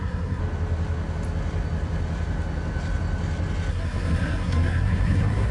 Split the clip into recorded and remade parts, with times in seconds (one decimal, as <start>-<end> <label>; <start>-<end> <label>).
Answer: 0.0-0.4 remade; 0.4-3.7 recorded; 3.7-5.5 remade